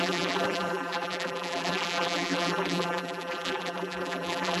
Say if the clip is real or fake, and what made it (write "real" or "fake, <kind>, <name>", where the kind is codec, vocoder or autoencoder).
fake, vocoder, BigVGAN v2